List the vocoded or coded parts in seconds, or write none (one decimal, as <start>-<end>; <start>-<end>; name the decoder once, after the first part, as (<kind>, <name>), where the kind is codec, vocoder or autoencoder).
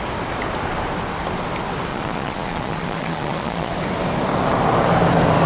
1.9-3.7 (vocoder, Vocos)